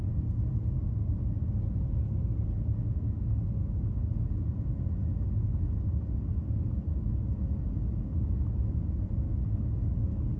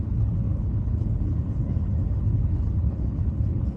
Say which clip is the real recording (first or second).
first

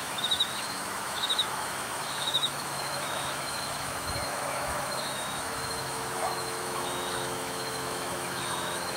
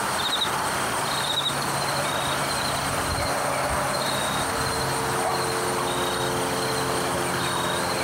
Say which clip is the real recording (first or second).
second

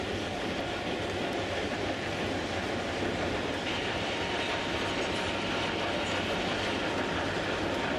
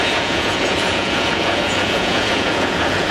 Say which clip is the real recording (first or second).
first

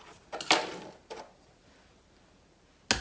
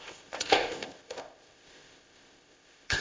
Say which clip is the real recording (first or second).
first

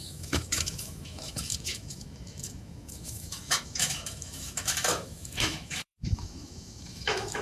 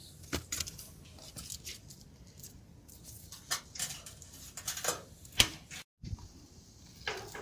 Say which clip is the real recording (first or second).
second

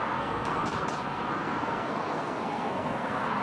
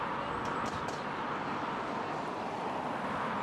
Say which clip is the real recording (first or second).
second